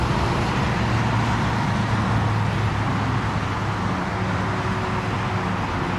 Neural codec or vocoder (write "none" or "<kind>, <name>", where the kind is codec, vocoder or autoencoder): none